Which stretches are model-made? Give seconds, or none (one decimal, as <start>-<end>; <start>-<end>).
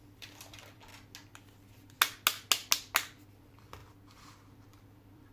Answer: 0.0-0.9; 3.3-3.8; 4.5-5.3